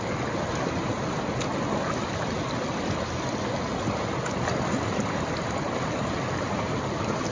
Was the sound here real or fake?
real